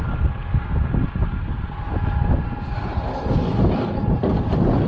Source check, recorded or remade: recorded